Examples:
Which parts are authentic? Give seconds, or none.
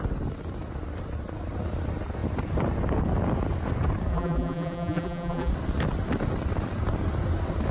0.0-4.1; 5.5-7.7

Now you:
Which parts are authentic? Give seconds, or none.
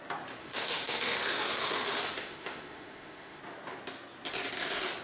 0.0-0.4; 3.4-5.0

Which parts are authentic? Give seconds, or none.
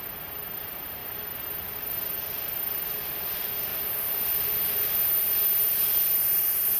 0.0-6.8